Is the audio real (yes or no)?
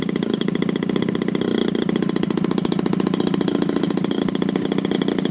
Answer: yes